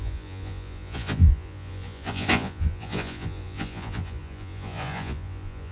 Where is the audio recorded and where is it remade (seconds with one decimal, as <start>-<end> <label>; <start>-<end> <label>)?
0.0-5.7 remade

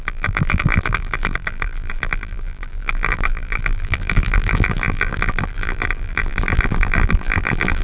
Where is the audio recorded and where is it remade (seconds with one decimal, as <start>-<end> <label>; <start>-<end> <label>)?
0.0-7.8 remade

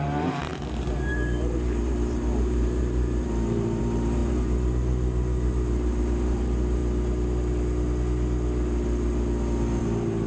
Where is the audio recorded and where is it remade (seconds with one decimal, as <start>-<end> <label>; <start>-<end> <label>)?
0.0-6.8 remade; 6.8-9.8 recorded; 9.8-10.3 remade

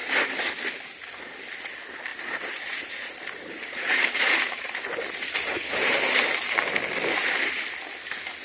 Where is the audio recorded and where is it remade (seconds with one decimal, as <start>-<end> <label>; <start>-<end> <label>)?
0.0-0.6 remade; 0.6-2.1 recorded; 2.1-6.6 remade; 6.6-8.4 recorded

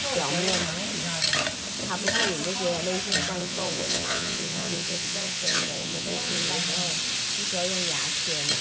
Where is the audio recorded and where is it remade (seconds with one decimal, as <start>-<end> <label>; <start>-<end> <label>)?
0.0-3.4 recorded; 3.4-6.5 remade; 6.5-8.6 recorded

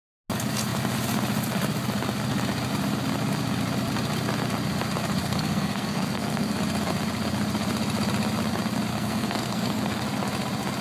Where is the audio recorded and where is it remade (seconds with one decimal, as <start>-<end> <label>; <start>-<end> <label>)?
0.0-5.2 recorded; 5.2-6.5 remade; 6.5-8.9 recorded; 8.9-10.0 remade; 10.0-10.8 recorded

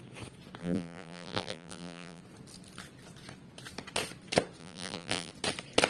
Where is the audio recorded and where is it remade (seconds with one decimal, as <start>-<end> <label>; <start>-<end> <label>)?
0.0-0.6 recorded; 0.6-2.2 remade; 2.2-4.6 recorded; 4.6-5.3 remade; 5.3-5.9 recorded

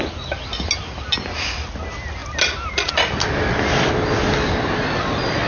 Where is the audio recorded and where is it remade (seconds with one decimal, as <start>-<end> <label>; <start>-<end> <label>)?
0.0-5.5 recorded